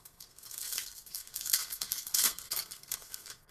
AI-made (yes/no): yes